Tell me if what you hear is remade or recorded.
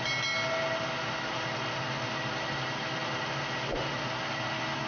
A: recorded